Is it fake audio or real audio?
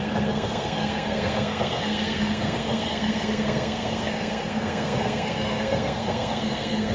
fake